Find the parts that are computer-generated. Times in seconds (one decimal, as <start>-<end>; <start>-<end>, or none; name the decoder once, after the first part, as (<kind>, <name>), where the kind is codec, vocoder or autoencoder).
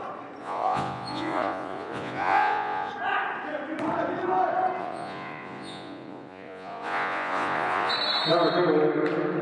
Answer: 0.4-2.9 (vocoder, Vocos); 4.8-7.9